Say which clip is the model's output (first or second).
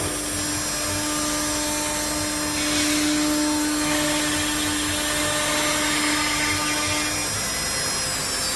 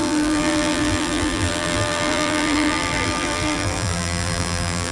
second